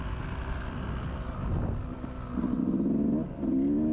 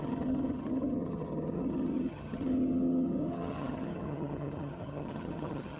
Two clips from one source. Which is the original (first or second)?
first